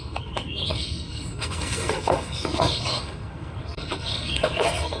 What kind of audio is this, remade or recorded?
remade